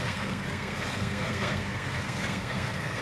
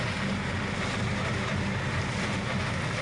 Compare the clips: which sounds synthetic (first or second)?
first